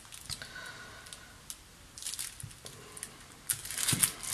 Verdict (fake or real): real